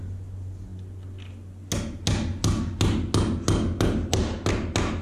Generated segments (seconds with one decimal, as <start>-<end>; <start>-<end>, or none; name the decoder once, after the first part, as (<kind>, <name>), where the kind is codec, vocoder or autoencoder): none